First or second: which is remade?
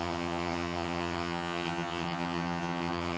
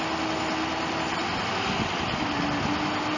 first